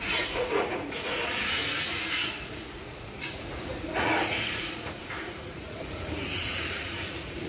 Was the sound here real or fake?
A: fake